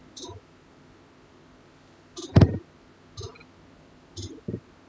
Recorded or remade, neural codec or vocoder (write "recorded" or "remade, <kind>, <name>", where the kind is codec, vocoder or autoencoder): recorded